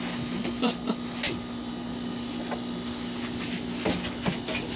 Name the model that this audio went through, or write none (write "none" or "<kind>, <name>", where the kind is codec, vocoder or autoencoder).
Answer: none